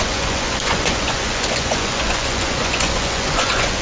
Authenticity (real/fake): fake